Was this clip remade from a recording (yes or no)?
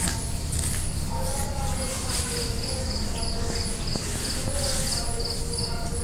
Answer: no